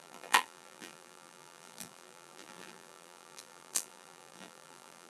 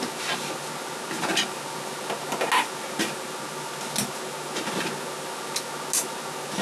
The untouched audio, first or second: second